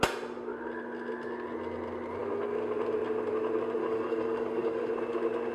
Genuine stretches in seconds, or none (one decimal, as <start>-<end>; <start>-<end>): 0.0-3.8; 4.9-5.5

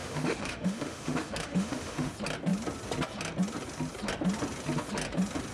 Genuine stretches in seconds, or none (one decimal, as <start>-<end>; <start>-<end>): 2.1-5.5